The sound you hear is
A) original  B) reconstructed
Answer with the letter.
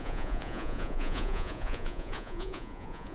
B